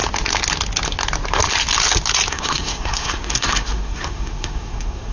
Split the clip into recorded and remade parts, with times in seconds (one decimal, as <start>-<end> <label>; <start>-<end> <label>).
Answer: 0.0-2.3 recorded; 2.3-5.1 remade